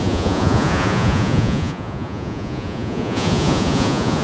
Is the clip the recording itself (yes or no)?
no